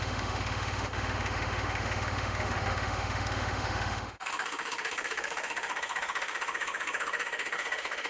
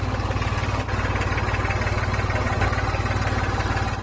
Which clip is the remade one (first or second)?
first